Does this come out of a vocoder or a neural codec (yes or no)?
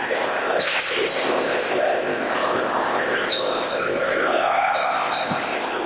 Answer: yes